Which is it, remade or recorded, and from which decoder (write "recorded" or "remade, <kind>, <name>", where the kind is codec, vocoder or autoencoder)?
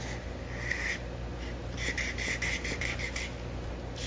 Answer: recorded